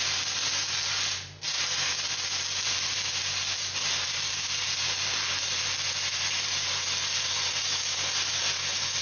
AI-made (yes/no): no